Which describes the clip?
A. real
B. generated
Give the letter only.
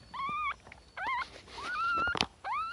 A